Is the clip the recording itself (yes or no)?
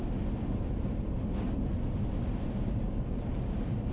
yes